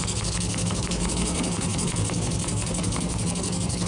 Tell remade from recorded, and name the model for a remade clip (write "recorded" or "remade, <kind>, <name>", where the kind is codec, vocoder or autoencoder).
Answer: remade, codec, SNAC